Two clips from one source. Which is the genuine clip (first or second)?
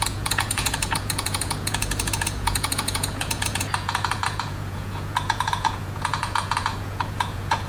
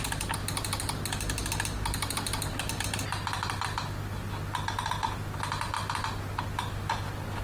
second